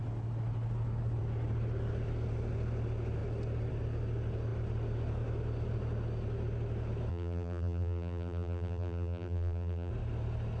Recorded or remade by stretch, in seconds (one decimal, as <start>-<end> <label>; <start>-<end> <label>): 0.0-7.1 recorded; 7.1-9.9 remade; 9.9-10.6 recorded